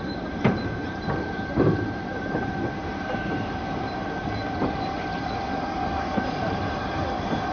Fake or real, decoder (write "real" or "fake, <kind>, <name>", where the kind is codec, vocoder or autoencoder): fake, vocoder, BigVGAN v2